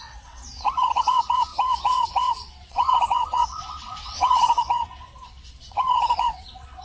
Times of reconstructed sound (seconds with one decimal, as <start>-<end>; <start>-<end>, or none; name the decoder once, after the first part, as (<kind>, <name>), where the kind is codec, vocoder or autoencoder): 0.0-6.8 (vocoder, WaveNeXt)